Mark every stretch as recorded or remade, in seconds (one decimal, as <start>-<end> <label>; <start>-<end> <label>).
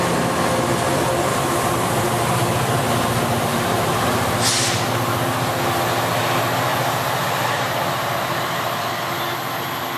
0.0-1.3 recorded; 1.3-2.0 remade; 2.0-3.5 recorded; 3.5-4.3 remade; 4.3-6.7 recorded; 6.7-8.9 remade; 8.9-10.0 recorded